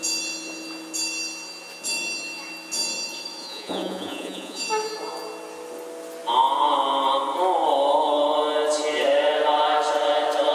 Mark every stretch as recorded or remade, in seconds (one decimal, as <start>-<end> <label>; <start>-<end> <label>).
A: 0.0-3.4 recorded; 3.4-4.6 remade; 4.6-10.5 recorded